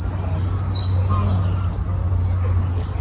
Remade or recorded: recorded